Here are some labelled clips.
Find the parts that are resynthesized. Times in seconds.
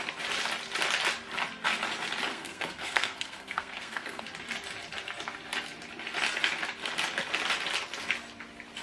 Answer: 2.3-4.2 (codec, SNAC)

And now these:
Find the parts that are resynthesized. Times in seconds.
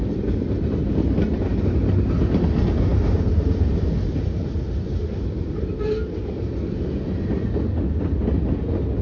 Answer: none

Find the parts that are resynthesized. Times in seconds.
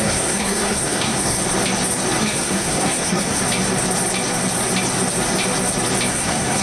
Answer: 0.0-1.4 (codec, SNAC); 2.2-3.4; 6.1-6.6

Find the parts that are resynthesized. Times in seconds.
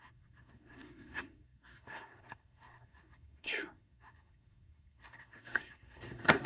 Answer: 0.0-6.5 (codec, SNAC)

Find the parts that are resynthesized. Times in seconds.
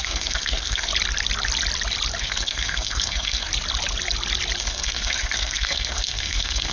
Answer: 0.0-0.9 (codec, SNAC); 2.2-3.5; 4.6-6.7